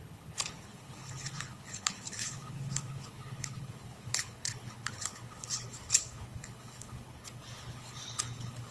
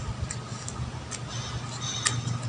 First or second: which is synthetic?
first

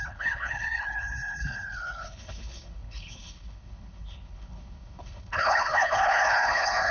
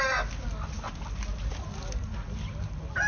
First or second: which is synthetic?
first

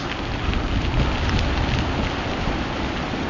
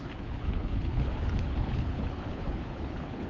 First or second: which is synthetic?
second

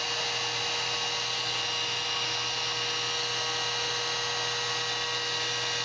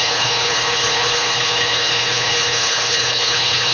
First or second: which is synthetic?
second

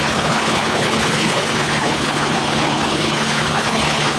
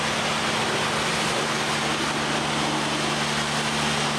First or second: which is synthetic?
first